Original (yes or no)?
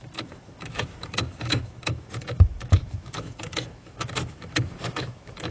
no